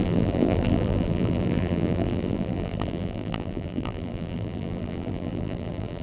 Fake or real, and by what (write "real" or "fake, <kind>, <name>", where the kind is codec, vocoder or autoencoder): fake, vocoder, BigVGAN v2